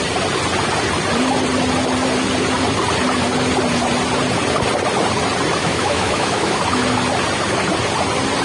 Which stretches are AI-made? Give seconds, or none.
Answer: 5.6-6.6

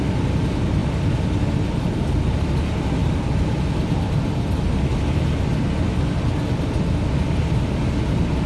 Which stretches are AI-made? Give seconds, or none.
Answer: none

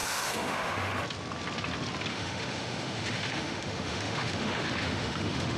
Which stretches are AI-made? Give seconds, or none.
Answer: 0.0-0.9; 2.1-5.6

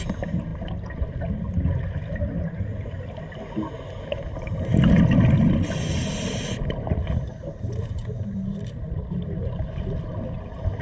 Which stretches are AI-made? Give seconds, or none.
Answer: none

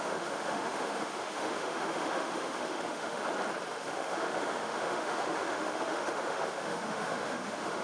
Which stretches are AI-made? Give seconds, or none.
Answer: 0.0-3.2; 3.7-7.8

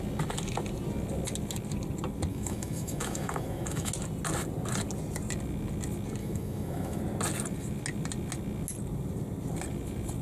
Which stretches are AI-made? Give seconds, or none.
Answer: 2.3-3.9; 6.2-7.0

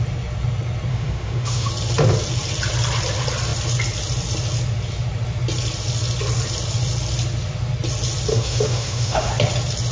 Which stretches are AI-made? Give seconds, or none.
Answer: 0.9-1.7; 8.3-9.3

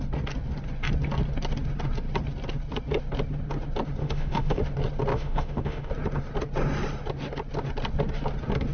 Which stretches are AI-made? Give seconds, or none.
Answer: 4.0-4.6; 5.1-5.9